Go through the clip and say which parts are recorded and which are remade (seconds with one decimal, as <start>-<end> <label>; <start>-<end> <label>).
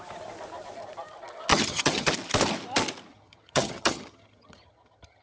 0.0-1.5 recorded; 1.5-2.1 remade; 2.1-3.1 recorded; 3.1-5.2 remade